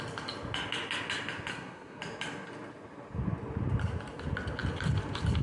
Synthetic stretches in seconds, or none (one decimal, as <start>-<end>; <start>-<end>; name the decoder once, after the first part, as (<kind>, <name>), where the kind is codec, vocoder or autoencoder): 1.5-2.0 (codec, SNAC)